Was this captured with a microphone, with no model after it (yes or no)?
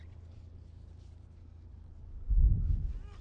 yes